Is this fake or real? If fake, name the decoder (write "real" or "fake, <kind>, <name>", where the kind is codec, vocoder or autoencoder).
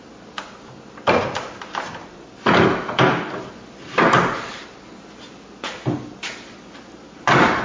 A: real